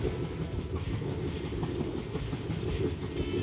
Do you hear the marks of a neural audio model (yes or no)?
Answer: no